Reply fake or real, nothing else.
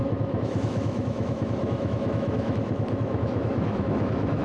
fake